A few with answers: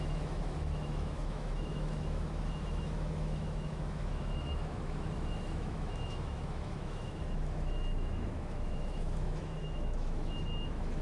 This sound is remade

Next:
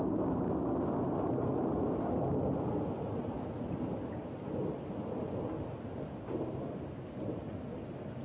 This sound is recorded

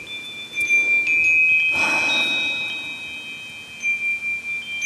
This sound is recorded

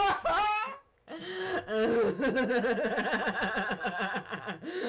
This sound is remade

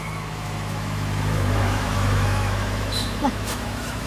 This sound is remade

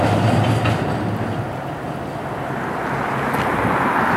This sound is recorded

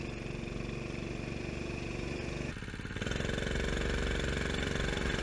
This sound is recorded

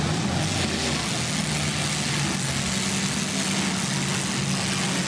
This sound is recorded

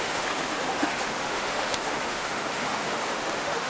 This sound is remade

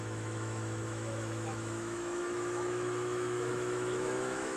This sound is remade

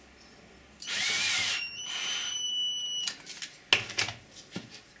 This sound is recorded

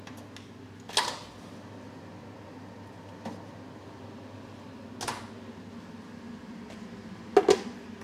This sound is recorded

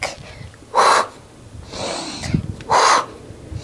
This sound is recorded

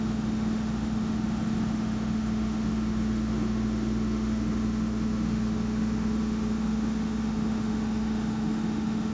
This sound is remade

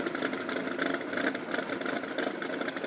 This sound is recorded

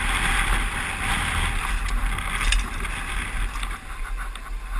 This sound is recorded